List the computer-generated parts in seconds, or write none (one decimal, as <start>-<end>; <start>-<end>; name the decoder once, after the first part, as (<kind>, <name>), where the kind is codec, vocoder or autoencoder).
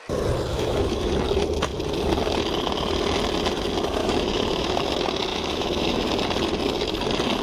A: 0.5-1.1 (autoencoder, DAC-VAE); 4.0-4.8; 5.3-6.0